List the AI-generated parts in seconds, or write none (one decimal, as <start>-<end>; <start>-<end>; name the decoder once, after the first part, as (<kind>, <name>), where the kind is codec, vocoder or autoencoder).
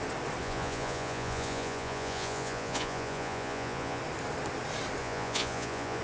0.4-4.0 (vocoder, Vocos); 5.0-6.0